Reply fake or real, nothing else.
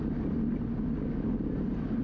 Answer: real